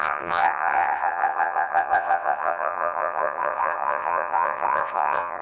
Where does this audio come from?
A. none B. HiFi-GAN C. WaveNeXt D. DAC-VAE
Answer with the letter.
C